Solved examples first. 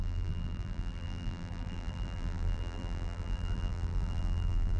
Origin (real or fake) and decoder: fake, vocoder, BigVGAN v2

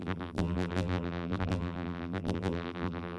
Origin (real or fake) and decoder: fake, vocoder, BigVGAN v2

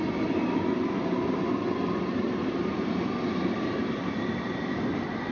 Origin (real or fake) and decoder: fake, vocoder, BigVGAN v2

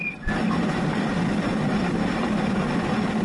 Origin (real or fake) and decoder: real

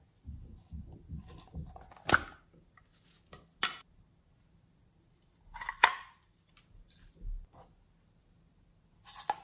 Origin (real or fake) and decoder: real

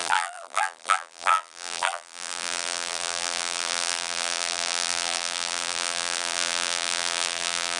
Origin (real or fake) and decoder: fake, vocoder, BigVGAN v2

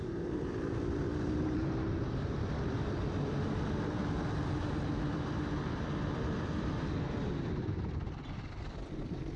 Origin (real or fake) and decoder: fake, vocoder, BigVGAN v2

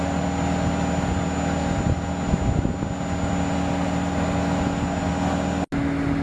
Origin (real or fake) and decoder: real